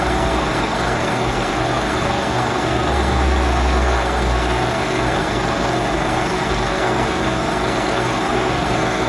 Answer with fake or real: fake